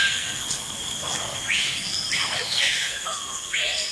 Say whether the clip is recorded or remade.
remade